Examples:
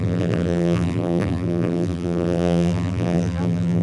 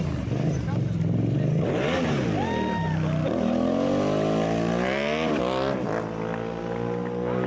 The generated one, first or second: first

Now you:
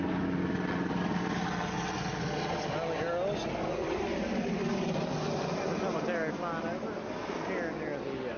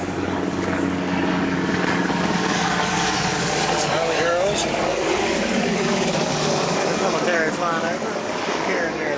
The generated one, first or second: second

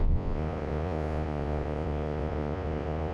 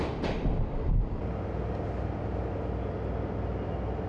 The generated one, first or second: first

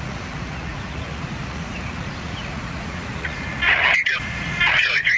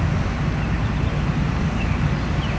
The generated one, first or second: first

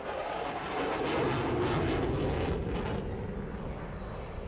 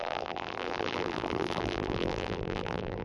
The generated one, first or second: second